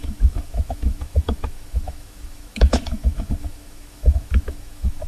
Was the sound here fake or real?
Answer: fake